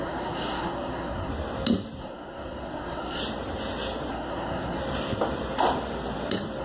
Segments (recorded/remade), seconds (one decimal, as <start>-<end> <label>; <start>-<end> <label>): 0.0-1.3 remade; 1.3-2.0 recorded; 2.0-3.2 remade; 3.2-4.1 recorded; 4.1-4.8 remade; 4.8-6.6 recorded